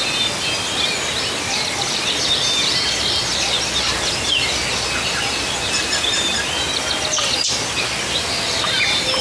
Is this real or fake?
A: real